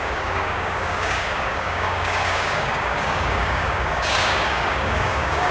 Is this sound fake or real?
fake